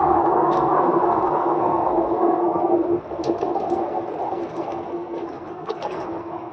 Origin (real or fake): fake